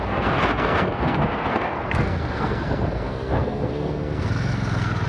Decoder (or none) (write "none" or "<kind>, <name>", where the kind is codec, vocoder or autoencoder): codec, SNAC